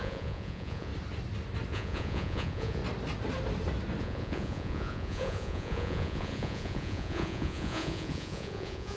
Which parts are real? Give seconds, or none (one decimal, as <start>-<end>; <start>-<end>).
0.9-1.7; 2.8-4.0